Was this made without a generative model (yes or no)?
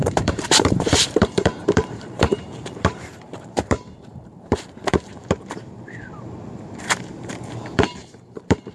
no